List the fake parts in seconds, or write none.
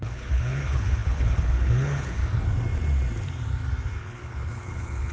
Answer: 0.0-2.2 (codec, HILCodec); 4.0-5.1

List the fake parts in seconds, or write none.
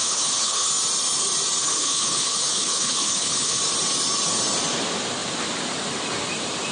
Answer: 0.0-0.7 (codec, HILCodec); 1.6-3.6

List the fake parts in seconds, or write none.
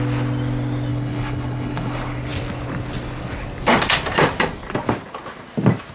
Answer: 0.9-1.9 (codec, HILCodec)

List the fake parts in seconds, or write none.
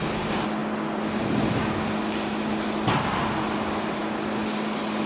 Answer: none